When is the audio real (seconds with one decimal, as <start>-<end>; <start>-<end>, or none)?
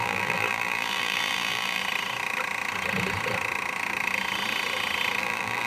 1.8-5.2